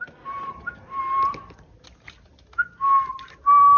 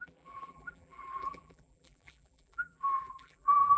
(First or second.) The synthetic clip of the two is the second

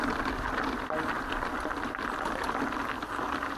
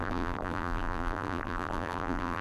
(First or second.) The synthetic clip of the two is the second